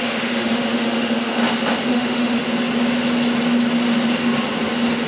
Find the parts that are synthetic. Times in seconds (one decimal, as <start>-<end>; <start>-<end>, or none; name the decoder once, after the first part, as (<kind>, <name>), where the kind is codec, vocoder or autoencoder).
0.0-1.4 (autoencoder, DAC-VAE); 1.9-2.4